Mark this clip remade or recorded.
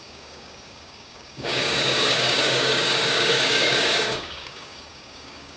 remade